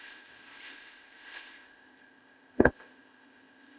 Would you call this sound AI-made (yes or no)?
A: yes